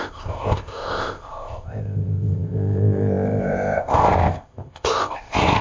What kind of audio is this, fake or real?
fake